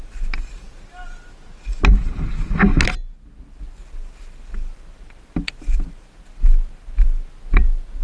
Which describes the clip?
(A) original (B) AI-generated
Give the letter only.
A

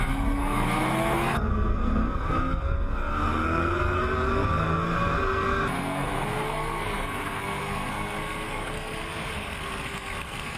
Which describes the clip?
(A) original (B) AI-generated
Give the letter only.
B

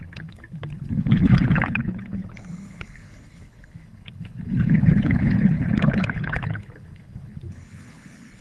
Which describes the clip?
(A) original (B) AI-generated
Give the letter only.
B